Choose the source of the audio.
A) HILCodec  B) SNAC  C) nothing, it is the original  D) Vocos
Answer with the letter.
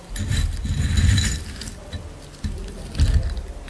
C